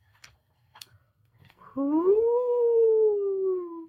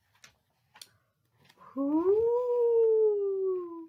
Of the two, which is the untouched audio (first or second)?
second